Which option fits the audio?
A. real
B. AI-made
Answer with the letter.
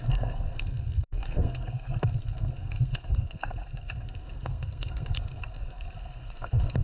B